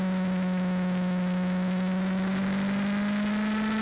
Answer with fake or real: real